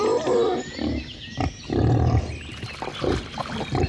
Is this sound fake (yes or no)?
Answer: no